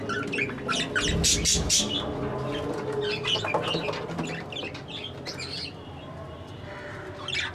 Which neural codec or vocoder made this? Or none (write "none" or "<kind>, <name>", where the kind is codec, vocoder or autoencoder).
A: none